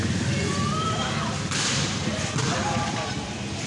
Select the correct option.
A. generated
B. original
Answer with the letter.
A